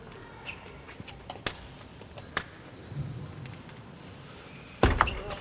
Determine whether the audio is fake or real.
real